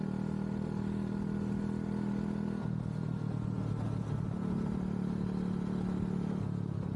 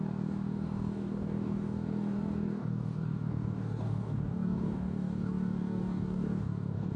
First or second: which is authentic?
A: first